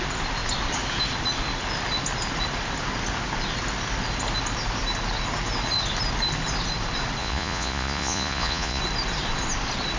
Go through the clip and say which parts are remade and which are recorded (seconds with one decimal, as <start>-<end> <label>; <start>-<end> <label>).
0.0-7.2 recorded; 7.2-8.8 remade; 8.8-10.0 recorded